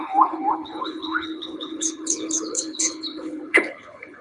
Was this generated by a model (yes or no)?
yes